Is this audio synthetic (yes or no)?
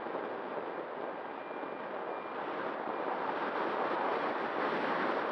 no